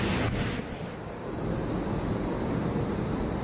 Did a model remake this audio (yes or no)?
no